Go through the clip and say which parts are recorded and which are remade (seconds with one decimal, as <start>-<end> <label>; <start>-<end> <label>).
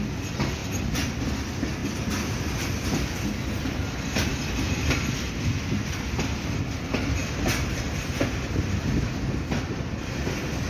0.0-10.7 recorded